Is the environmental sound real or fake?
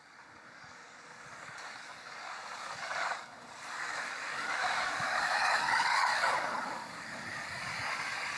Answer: fake